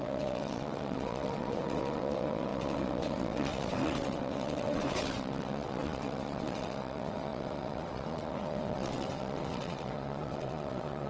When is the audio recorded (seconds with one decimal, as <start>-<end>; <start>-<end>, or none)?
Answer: none